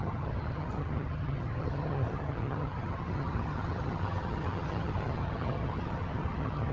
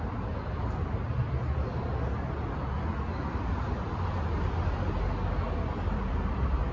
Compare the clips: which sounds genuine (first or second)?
second